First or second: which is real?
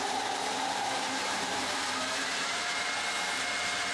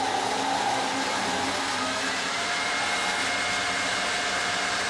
second